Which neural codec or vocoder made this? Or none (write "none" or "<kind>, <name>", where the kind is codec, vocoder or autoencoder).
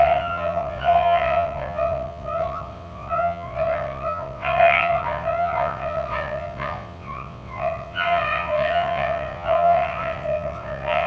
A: vocoder, WaveNeXt